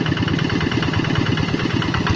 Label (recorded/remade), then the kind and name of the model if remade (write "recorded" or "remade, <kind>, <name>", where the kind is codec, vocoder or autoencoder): recorded